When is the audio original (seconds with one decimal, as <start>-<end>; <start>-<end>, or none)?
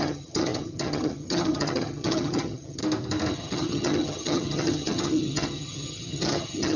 2.8-3.3